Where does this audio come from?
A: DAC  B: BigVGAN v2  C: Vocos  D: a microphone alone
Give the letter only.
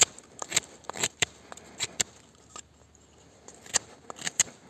D